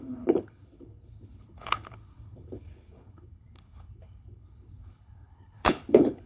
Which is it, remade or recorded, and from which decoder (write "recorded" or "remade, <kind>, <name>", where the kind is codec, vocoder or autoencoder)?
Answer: remade, codec, HILCodec